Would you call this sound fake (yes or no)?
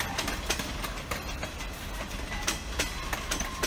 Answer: no